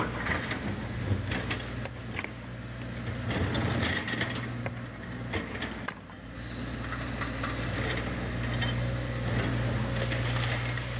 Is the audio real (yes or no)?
yes